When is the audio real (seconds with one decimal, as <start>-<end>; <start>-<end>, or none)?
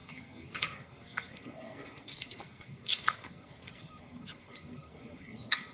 none